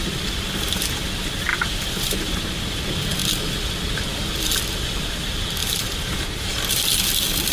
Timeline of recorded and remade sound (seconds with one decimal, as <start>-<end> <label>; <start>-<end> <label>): 0.0-1.5 recorded; 1.5-2.5 remade; 2.5-5.6 recorded; 5.6-6.5 remade; 6.5-7.5 recorded